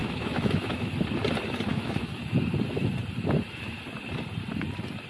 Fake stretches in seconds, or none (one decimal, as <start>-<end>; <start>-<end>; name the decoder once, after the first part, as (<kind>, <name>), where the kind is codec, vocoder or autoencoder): 0.0-0.9 (autoencoder, DAC-VAE); 1.7-2.2